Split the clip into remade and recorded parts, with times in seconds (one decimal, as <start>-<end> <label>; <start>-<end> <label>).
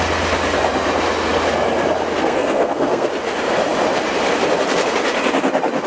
0.0-2.2 recorded; 2.2-3.1 remade; 3.1-5.9 recorded